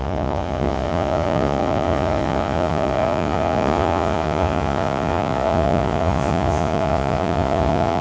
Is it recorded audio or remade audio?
remade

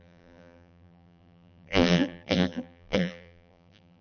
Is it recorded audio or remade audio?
remade